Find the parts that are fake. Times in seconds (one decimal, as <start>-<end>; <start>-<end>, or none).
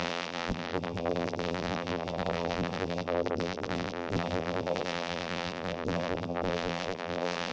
0.0-7.5